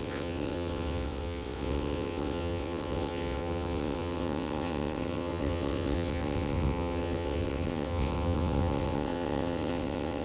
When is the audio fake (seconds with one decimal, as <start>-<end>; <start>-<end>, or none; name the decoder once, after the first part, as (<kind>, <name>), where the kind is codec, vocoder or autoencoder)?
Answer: 0.0-10.2 (vocoder, WaveNeXt)